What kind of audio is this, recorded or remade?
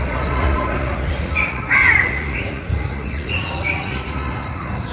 remade